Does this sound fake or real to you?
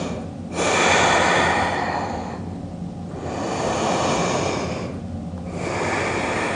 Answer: real